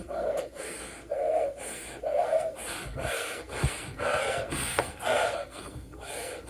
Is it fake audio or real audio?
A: fake